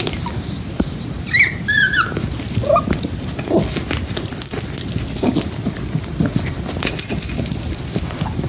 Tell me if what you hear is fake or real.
real